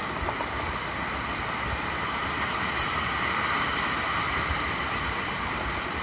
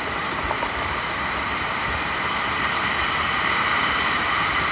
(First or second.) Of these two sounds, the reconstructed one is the second